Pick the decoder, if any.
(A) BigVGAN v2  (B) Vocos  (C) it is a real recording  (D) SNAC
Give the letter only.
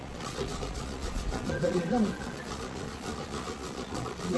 B